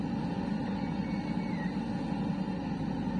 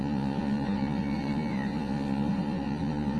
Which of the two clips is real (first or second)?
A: first